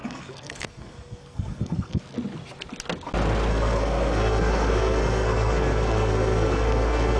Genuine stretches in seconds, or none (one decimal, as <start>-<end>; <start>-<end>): 2.0-3.5